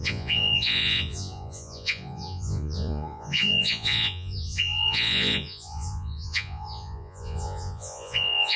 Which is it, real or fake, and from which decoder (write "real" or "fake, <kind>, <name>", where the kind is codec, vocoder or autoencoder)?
fake, vocoder, Vocos